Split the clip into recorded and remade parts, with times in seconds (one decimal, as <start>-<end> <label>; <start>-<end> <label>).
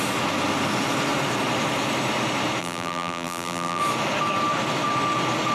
0.0-2.6 recorded; 2.6-3.8 remade; 3.8-5.5 recorded